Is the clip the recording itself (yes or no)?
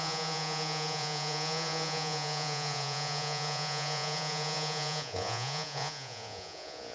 no